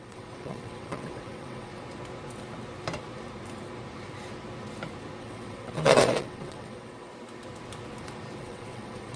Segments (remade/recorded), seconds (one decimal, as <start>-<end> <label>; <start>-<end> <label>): 0.0-1.7 remade; 1.7-5.2 recorded; 5.2-7.1 remade; 7.1-8.4 recorded; 8.4-9.2 remade